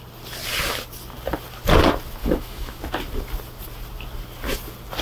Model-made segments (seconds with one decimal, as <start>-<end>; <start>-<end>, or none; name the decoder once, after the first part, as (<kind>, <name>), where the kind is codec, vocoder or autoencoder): 2.2-2.8 (autoencoder, DAC-VAE)